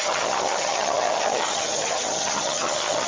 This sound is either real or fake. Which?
fake